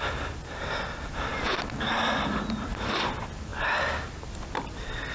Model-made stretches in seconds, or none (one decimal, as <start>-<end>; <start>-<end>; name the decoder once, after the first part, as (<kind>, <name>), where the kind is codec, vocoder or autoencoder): none